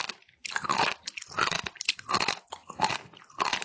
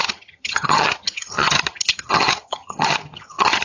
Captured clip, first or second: first